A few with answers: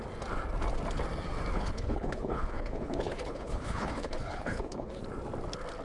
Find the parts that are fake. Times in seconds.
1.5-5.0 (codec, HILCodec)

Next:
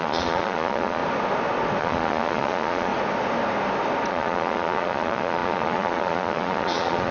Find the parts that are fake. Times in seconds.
0.0-1.0 (vocoder, Vocos); 1.8-2.9; 4.1-7.1

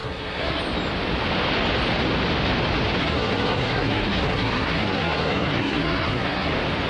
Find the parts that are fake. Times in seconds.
0.0-0.6 (codec, SNAC); 3.0-6.5

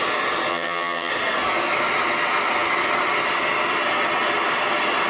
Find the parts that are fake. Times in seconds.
0.5-1.1 (vocoder, HiFi-GAN)

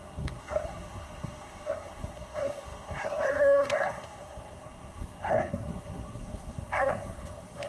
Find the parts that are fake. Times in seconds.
0.0-7.7 (codec, SNAC)

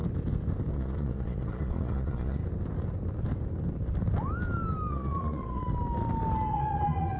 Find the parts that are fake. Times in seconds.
0.7-2.4 (vocoder, Vocos); 4.9-5.6; 6.5-7.2

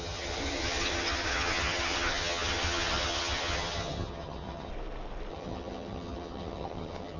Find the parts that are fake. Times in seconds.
0.0-4.7 (vocoder, HiFi-GAN); 5.3-7.2

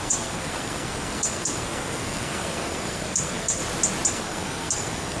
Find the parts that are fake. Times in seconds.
0.0-3.6 (codec, SNAC); 4.1-5.2